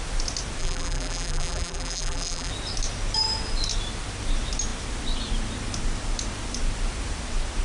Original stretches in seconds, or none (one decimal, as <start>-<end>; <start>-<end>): 0.0-0.6; 2.5-7.6